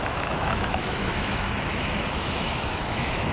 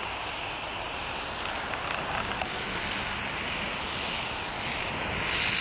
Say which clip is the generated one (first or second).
first